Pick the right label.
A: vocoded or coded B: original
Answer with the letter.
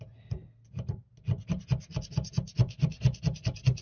B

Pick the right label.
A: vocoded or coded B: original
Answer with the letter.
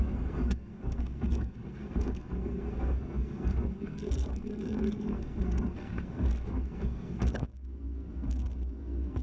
A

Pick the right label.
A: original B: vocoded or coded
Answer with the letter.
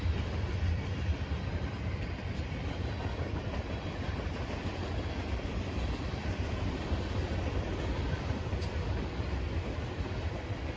B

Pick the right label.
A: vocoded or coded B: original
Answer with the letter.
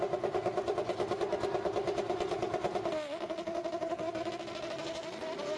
B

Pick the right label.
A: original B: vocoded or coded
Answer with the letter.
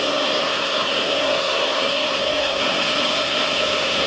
B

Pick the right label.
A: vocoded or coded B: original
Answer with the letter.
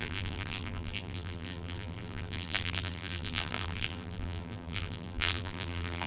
A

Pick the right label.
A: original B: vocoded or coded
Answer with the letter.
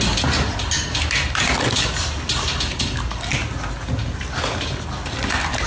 A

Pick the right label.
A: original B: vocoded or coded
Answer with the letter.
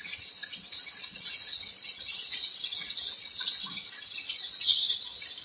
B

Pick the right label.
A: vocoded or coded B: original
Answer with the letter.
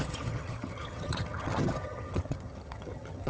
A